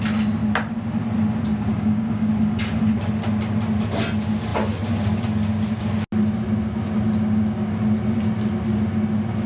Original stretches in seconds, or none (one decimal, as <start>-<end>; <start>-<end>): 0.0-1.7; 2.3-9.5